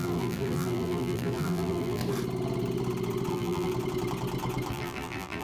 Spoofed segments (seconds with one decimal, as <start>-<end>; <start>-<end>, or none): 0.0-2.0; 3.3-3.7; 4.7-5.4